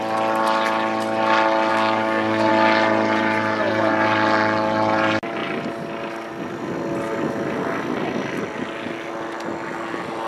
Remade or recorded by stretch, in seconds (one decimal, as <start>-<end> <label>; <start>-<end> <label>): 0.0-1.7 recorded; 1.7-2.5 remade; 2.5-10.3 recorded